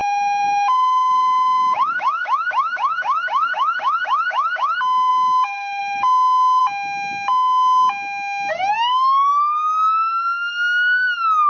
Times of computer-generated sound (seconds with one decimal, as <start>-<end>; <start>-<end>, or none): 0.0-6.6; 8.5-11.5